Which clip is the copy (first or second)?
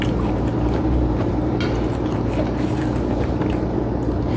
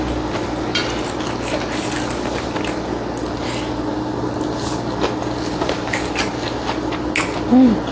first